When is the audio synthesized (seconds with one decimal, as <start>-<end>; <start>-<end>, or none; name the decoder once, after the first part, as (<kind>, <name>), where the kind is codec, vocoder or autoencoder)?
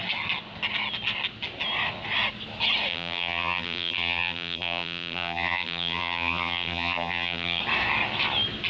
2.9-7.6 (vocoder, BigVGAN v2)